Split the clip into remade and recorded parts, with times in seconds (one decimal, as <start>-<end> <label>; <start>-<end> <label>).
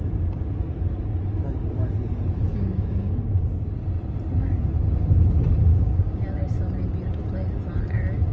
0.0-2.5 recorded; 2.5-3.7 remade; 3.7-5.7 recorded; 5.7-6.2 remade; 6.2-8.3 recorded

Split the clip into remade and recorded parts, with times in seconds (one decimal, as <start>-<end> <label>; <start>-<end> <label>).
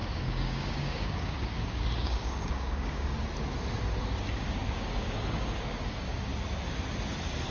0.0-3.2 remade; 3.2-4.0 recorded; 4.0-6.3 remade; 6.3-7.5 recorded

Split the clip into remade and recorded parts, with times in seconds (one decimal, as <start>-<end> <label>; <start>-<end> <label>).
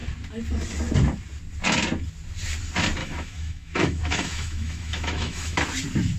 0.0-3.0 recorded; 3.0-5.6 remade; 5.6-6.2 recorded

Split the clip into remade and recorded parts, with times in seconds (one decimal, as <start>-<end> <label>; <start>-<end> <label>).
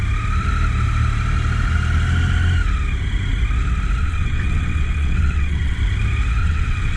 0.0-4.0 recorded; 4.0-5.8 remade; 5.8-6.4 recorded; 6.4-7.0 remade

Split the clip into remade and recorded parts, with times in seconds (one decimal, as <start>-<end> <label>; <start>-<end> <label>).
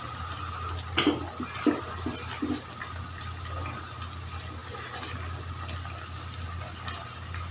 0.0-7.5 recorded